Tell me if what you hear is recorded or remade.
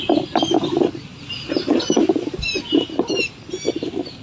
recorded